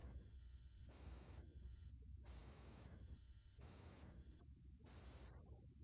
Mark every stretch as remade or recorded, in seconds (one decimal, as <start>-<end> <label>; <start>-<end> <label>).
0.0-1.9 remade; 1.9-2.4 recorded; 2.4-4.4 remade; 4.4-5.8 recorded